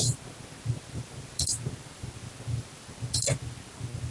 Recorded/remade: recorded